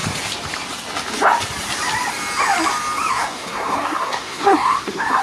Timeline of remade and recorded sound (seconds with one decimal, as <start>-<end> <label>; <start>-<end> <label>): 0.0-3.1 recorded; 3.1-5.2 remade